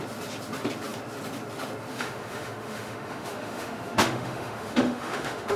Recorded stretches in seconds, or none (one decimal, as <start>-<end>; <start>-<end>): 0.0-1.9